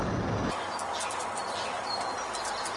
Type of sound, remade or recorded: recorded